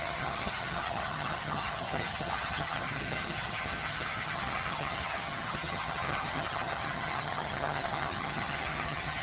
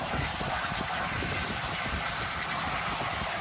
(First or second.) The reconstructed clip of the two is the first